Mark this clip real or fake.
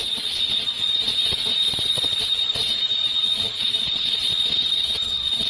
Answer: fake